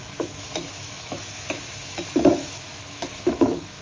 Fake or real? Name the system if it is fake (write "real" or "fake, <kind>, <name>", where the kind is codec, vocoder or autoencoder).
fake, autoencoder, DAC-VAE